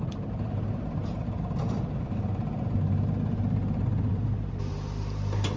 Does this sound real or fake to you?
fake